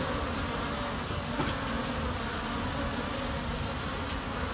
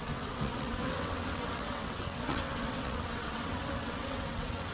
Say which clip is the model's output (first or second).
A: second